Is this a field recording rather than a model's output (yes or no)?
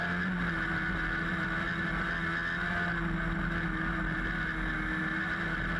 yes